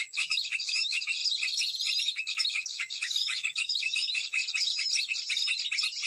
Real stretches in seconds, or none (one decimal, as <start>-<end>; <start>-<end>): 1.2-2.0; 4.4-6.1